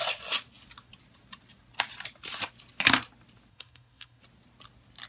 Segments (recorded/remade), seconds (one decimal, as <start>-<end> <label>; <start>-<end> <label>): 0.0-3.5 recorded; 3.5-4.2 remade; 4.2-5.1 recorded